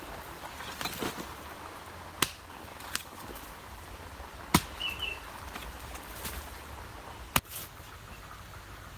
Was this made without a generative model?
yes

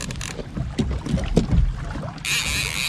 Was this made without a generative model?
yes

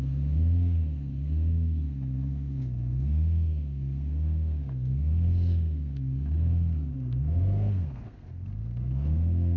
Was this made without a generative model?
no